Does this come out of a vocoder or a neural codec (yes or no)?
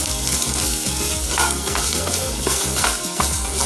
yes